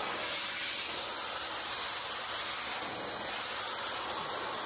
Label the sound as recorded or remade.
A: recorded